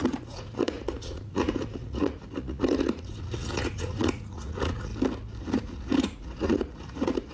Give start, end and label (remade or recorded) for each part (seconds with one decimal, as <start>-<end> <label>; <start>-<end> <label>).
0.0-4.9 remade; 4.9-5.4 recorded; 5.4-7.3 remade